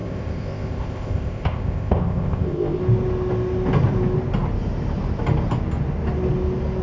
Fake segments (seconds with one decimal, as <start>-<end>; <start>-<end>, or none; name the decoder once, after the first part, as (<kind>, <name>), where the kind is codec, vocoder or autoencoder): 0.0-2.8 (codec, ZipCodec)